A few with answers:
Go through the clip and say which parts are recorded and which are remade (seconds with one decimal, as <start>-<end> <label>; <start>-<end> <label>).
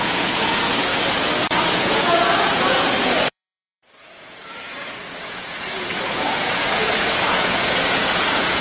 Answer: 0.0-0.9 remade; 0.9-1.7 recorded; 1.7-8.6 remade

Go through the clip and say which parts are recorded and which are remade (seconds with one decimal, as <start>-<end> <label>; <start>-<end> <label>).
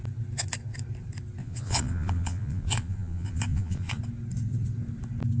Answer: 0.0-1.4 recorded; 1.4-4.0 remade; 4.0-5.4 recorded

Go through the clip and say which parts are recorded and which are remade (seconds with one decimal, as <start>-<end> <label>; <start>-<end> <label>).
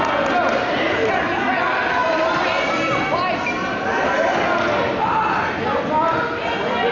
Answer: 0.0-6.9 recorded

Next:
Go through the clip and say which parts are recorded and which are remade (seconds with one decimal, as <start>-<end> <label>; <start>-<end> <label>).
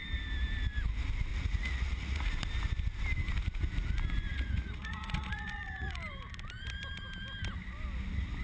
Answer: 0.0-1.3 recorded; 1.3-2.3 remade; 2.3-4.3 recorded; 4.3-6.0 remade; 6.0-8.4 recorded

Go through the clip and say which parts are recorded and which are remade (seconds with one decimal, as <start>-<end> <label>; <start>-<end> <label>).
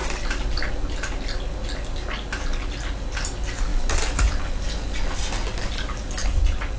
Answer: 0.0-6.8 recorded